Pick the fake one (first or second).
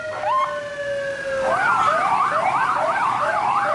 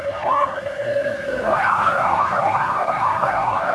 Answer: second